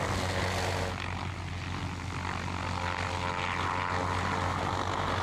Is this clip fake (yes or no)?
no